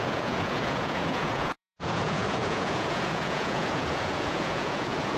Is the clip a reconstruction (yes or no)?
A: yes